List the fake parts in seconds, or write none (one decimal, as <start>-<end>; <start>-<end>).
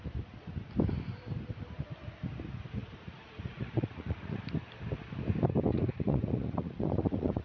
2.8-4.4; 5.7-7.4